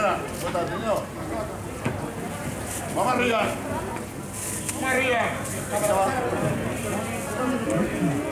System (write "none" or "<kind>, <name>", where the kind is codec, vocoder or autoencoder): none